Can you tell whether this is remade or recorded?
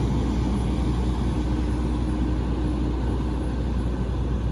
recorded